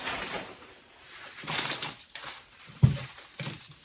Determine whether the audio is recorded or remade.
remade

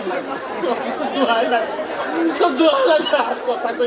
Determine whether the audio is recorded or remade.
remade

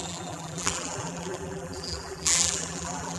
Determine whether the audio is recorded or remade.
remade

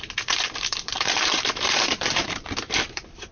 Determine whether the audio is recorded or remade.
remade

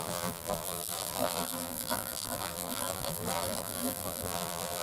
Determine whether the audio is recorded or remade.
remade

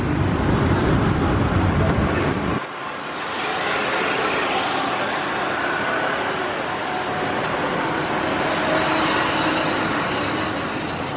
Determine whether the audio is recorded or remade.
recorded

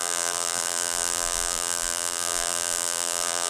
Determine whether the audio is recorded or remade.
remade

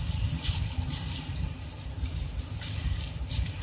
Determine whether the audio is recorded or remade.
remade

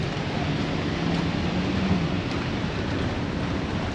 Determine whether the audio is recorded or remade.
recorded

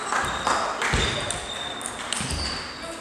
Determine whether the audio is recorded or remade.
recorded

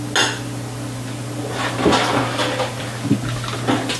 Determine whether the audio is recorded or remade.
recorded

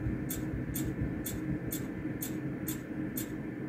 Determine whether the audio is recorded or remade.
recorded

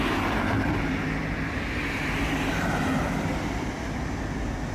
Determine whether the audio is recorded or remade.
recorded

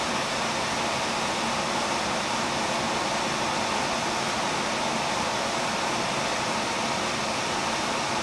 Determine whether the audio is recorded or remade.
recorded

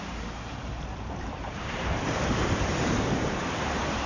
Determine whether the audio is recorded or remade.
remade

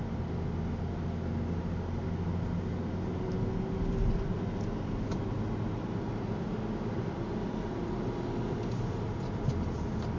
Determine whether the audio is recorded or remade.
recorded